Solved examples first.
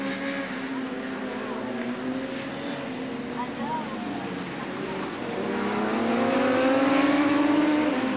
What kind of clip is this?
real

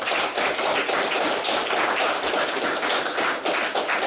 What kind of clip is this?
real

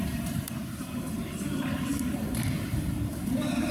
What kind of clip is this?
fake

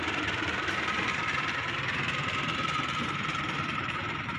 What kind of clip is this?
fake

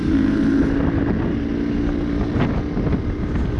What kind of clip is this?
real